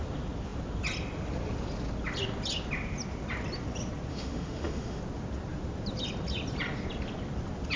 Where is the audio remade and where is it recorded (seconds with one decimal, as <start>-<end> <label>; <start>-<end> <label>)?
0.0-4.1 recorded; 4.1-5.0 remade; 5.0-7.8 recorded